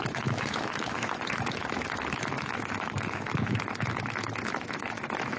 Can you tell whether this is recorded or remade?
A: remade